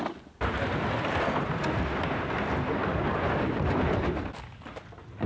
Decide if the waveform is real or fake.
real